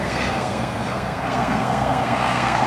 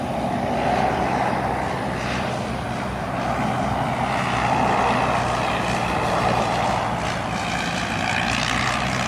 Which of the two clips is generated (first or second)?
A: first